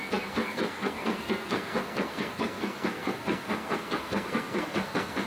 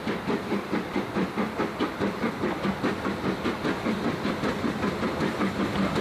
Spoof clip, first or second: first